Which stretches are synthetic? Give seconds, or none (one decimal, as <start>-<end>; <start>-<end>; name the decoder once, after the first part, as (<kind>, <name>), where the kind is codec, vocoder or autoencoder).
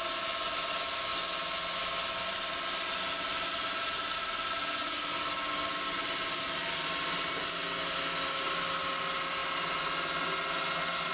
none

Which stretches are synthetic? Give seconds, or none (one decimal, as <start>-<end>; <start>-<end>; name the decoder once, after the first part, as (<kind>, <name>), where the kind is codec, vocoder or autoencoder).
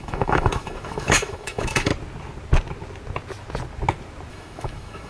0.0-1.9 (autoencoder, DAC-VAE); 4.3-5.1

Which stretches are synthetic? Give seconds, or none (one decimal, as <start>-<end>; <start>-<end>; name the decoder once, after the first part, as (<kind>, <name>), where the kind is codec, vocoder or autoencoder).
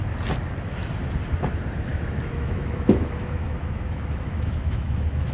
1.9-5.3 (autoencoder, DAC-VAE)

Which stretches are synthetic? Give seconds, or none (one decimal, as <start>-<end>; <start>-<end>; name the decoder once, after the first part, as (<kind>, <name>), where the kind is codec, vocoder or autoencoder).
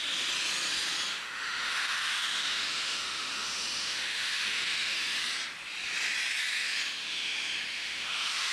1.1-5.2 (autoencoder, DAC-VAE); 6.5-8.5